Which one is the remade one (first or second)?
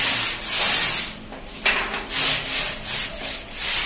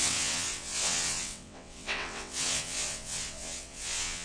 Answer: second